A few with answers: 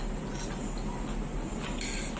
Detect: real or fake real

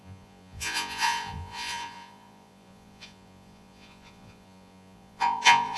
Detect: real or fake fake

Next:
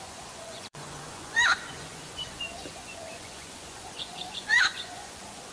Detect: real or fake fake